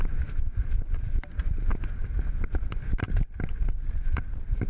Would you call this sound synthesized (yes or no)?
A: no